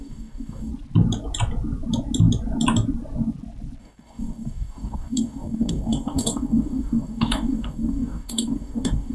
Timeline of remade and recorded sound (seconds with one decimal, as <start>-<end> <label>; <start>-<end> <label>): 0.0-0.7 remade; 0.7-3.8 recorded; 3.8-9.1 remade